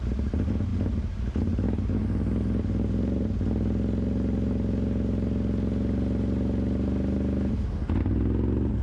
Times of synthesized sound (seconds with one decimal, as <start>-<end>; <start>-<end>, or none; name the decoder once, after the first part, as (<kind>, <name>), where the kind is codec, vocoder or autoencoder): none